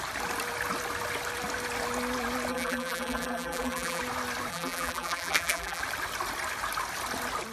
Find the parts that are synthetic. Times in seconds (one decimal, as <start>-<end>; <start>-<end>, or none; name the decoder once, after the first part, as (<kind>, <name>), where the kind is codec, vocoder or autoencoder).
2.5-4.0 (vocoder, BigVGAN v2); 4.5-5.8